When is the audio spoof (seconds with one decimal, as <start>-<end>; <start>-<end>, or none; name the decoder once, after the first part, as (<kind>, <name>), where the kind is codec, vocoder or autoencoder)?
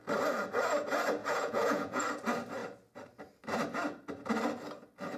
1.2-2.0 (vocoder, Vocos)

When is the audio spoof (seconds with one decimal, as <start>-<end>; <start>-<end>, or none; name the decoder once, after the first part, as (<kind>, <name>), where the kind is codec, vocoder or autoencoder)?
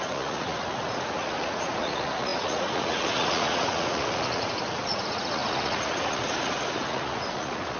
0.0-7.8 (vocoder, Vocos)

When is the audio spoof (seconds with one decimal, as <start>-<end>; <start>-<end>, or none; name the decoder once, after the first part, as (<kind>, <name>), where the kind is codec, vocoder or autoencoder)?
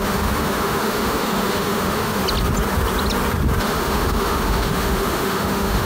0.0-2.2 (autoencoder, DAC-VAE); 3.6-5.8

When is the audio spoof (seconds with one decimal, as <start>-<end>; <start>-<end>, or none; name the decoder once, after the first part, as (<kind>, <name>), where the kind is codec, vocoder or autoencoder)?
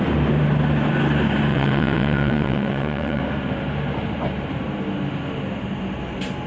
1.5-3.2 (vocoder, WaveNeXt)